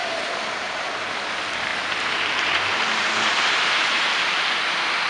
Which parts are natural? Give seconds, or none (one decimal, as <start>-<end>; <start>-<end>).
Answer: 0.9-1.7; 4.0-5.1